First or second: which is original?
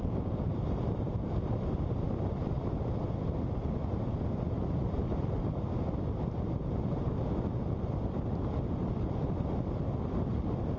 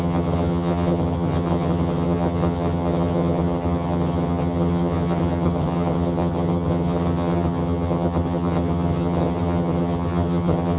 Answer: first